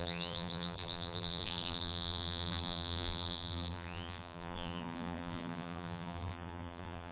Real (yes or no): no